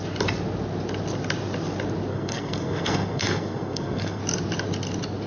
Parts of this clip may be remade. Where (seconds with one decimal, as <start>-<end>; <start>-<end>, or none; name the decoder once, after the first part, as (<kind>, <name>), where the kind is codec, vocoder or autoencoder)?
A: 2.1-4.2 (codec, SNAC)